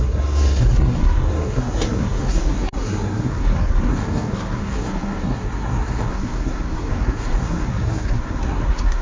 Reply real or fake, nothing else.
fake